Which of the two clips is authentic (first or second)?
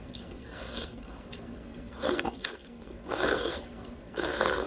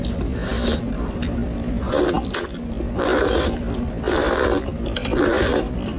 second